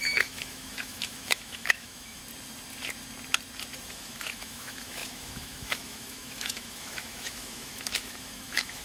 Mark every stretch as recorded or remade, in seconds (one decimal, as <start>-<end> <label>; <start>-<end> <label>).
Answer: 0.0-2.2 remade; 2.2-3.9 recorded; 3.9-8.8 remade